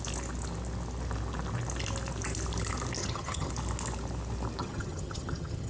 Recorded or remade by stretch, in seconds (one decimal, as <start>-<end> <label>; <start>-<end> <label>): 0.0-3.0 recorded; 3.0-3.5 remade; 3.5-4.6 recorded; 4.6-5.7 remade